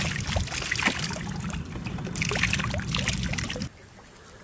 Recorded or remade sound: recorded